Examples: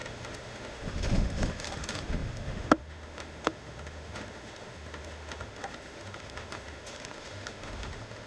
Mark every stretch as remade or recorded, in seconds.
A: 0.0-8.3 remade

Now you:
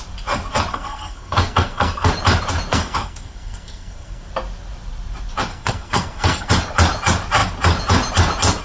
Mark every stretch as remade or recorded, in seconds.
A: 0.0-0.7 recorded; 0.7-2.1 remade; 2.1-2.7 recorded; 2.7-4.3 remade; 4.3-5.5 recorded; 5.5-6.5 remade; 6.5-8.6 recorded

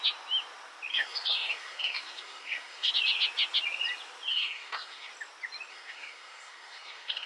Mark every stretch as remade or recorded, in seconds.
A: 0.0-0.9 recorded; 0.9-2.9 remade; 2.9-4.3 recorded; 4.3-5.1 remade; 5.1-5.7 recorded; 5.7-7.3 remade

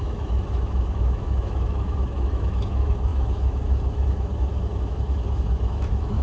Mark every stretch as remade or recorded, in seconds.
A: 0.0-6.2 remade

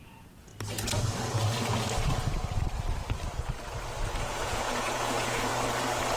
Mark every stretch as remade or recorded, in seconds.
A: 0.0-0.5 remade; 0.5-4.2 recorded; 4.2-5.5 remade; 5.5-6.2 recorded

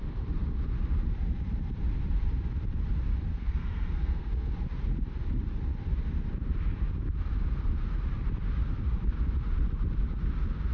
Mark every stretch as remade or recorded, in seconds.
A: 0.0-3.3 recorded; 3.3-4.5 remade; 4.5-10.7 recorded